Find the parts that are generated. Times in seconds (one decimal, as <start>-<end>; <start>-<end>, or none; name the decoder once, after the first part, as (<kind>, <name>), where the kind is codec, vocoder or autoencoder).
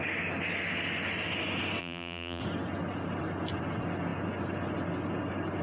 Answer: 1.8-2.4 (vocoder, BigVGAN v2)